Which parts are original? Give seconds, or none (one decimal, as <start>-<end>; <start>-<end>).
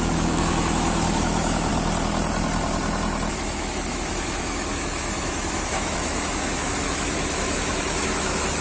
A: 1.7-3.3